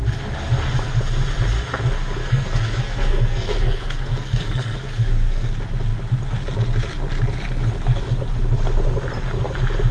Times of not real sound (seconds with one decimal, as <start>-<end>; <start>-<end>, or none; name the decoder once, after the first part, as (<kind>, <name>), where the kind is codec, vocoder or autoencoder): 2.2-5.5 (codec, SNAC)